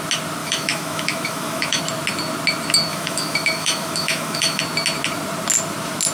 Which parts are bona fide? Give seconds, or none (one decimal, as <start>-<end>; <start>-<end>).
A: 0.0-0.4; 1.8-2.9; 4.6-6.1